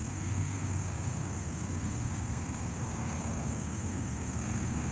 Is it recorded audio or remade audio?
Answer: remade